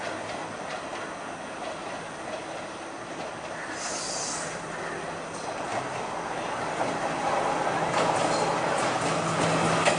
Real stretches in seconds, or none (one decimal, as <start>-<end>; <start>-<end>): 0.0-10.0